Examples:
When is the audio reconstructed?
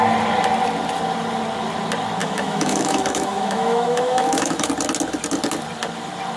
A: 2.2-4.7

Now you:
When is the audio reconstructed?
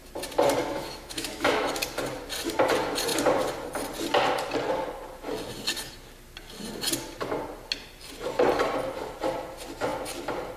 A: 0.6-1.7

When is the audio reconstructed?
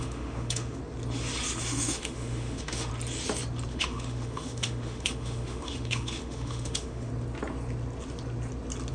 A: 0.0-0.8; 1.6-2.9; 3.7-7.1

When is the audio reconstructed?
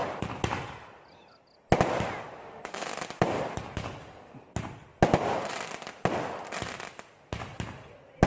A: 2.4-2.9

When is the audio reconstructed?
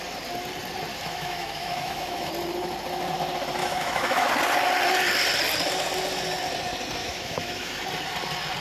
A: 0.9-2.3; 3.6-4.3; 7.0-7.8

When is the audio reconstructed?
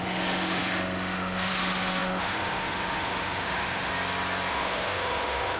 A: 0.0-3.9; 4.5-5.6